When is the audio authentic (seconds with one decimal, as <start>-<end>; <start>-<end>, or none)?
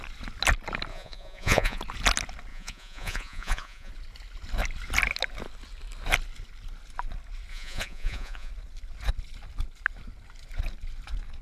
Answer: 0.0-0.9; 1.8-2.5; 3.9-7.5; 8.5-11.4